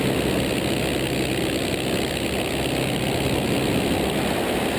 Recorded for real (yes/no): yes